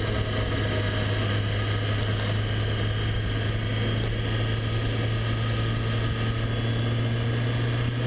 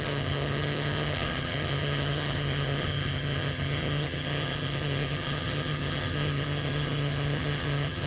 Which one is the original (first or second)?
first